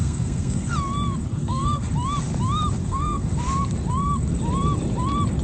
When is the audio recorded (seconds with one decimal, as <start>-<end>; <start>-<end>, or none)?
0.7-1.3; 1.9-2.8; 3.3-5.4